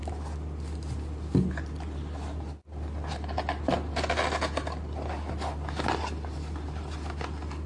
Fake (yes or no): no